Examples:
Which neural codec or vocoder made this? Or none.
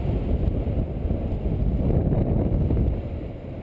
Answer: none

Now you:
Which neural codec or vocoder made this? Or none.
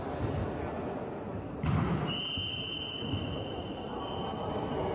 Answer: none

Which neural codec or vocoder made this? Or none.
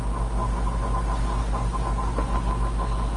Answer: none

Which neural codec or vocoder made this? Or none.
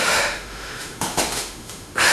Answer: autoencoder, DAC-VAE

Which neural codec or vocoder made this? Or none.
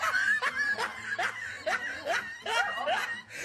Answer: none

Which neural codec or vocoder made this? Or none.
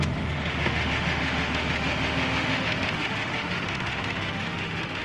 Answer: autoencoder, DAC-VAE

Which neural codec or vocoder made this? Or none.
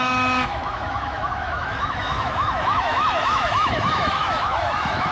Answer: autoencoder, DAC-VAE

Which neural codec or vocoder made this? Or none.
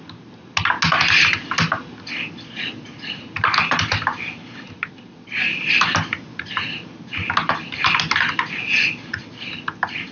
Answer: none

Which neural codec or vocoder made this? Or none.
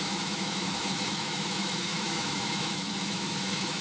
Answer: autoencoder, DAC-VAE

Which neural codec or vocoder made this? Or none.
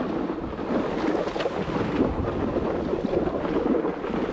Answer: none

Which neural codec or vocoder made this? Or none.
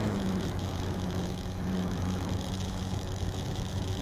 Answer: autoencoder, DAC-VAE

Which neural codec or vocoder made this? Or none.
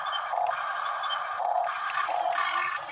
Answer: none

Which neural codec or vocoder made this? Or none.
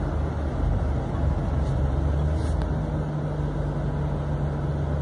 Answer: none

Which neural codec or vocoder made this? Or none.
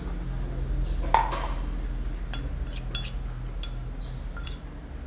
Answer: none